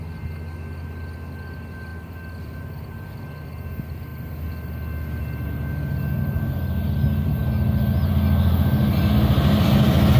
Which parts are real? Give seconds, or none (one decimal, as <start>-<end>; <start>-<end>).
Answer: 0.0-1.9; 3.2-10.2